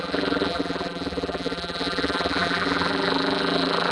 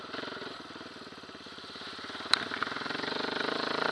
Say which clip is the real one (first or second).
second